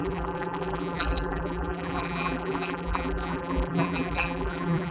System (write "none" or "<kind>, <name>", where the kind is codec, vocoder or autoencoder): vocoder, BigVGAN v2